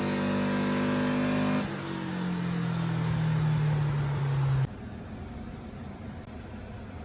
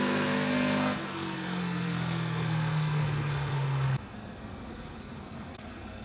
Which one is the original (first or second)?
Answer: first